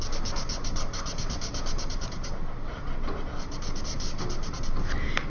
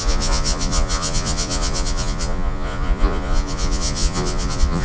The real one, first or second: first